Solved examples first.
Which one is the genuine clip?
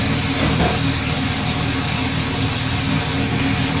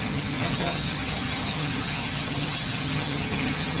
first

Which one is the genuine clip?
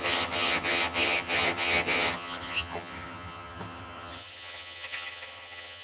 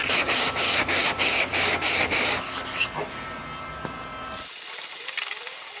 second